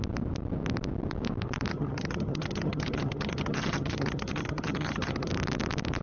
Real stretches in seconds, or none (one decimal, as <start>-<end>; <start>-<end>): 0.0-1.7; 5.3-6.0